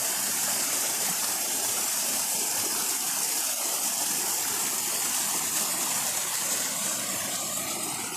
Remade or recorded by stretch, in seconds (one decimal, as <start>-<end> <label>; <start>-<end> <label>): 0.0-2.9 remade; 2.9-6.2 recorded; 6.2-8.2 remade